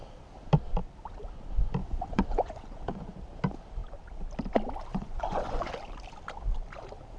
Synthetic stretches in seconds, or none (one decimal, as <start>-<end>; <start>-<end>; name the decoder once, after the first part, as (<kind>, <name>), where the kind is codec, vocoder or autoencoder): 1.8-3.1 (vocoder, Vocos); 4.9-5.7